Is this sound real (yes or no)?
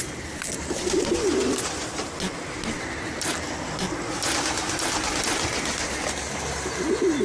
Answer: yes